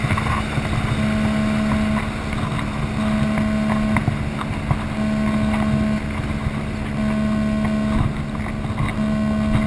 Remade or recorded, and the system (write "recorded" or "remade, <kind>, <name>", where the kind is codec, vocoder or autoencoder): recorded